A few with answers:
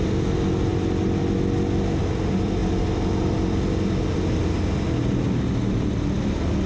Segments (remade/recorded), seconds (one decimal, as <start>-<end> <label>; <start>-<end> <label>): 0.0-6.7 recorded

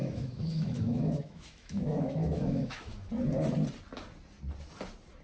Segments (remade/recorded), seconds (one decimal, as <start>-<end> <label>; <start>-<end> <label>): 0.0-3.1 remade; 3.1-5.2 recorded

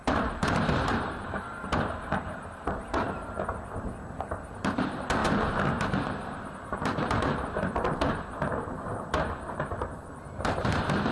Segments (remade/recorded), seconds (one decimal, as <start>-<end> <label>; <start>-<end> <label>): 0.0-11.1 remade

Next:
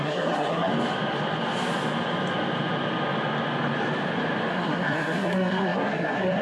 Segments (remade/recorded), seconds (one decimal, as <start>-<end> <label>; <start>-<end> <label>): 0.0-0.7 remade; 0.7-4.5 recorded; 4.5-6.4 remade

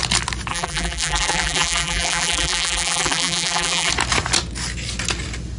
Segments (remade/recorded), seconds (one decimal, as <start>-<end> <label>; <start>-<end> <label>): 0.0-0.5 recorded; 0.5-3.9 remade; 3.9-5.6 recorded